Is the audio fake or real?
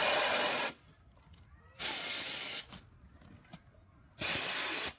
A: real